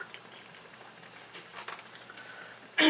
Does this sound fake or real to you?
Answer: real